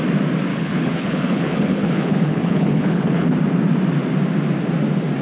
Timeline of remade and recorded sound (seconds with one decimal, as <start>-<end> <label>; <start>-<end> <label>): 0.0-0.5 recorded; 0.5-3.3 remade; 3.3-5.2 recorded